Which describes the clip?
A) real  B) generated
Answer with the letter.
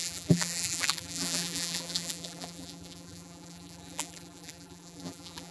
B